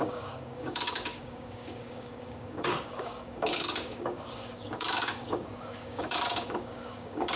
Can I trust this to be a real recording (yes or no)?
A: no